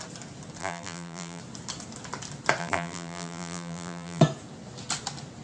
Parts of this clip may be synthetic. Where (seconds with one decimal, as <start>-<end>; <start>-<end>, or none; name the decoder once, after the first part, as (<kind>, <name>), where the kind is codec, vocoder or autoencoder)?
0.6-1.4 (vocoder, BigVGAN v2); 2.6-4.2